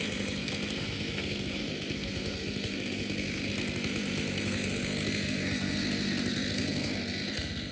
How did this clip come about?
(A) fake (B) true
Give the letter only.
A